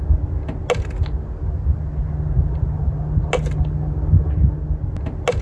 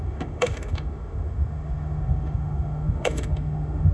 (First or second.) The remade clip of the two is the second